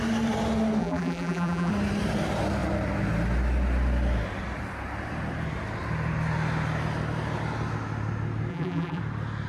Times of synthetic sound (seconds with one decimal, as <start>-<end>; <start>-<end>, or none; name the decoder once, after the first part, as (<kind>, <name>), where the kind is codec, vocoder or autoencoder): 0.8-1.7 (vocoder, BigVGAN v2); 8.5-9.0